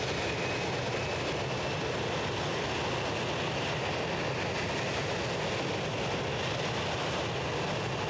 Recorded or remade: recorded